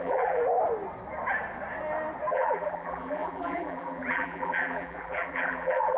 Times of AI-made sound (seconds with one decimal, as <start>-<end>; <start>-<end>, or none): 0.0-0.4; 2.3-6.0